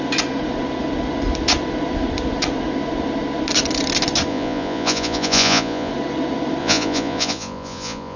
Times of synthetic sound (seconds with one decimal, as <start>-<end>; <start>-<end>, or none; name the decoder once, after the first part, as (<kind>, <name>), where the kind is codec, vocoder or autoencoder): 4.3-5.9 (vocoder, Vocos); 6.6-8.2